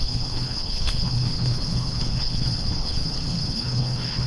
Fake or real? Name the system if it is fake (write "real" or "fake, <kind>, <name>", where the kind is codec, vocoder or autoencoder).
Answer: fake, codec, HILCodec